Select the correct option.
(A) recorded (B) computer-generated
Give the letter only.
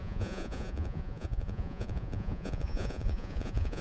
B